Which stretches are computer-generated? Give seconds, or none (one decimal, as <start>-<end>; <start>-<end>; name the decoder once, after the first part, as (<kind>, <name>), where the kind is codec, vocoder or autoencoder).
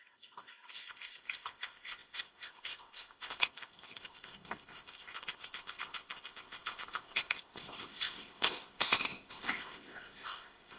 0.0-10.8 (codec, ZipCodec)